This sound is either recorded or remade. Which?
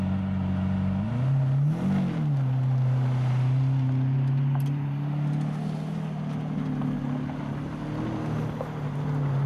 recorded